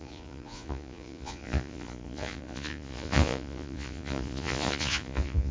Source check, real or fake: fake